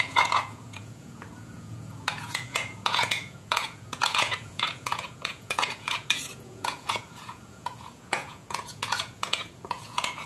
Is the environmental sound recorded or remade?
remade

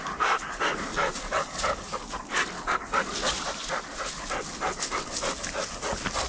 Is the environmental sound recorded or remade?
recorded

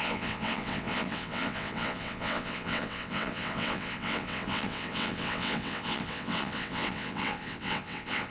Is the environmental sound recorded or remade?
remade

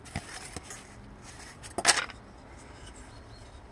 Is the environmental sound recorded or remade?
recorded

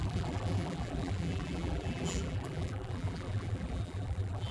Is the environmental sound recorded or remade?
remade